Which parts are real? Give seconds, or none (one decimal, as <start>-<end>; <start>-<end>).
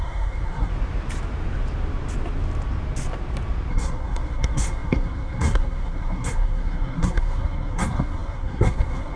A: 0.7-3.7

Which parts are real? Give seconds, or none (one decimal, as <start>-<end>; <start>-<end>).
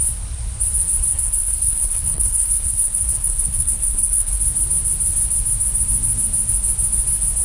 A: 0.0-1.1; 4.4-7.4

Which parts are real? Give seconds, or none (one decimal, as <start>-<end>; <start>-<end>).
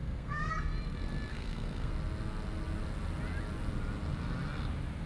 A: 0.5-1.3; 1.9-5.1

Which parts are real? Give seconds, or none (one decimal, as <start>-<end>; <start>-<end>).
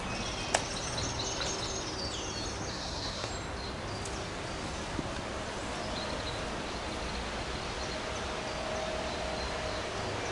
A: 0.0-2.7; 3.3-10.3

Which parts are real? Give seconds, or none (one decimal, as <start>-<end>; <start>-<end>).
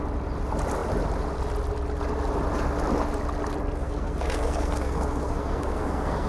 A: 0.0-3.8